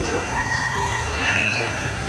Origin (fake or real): fake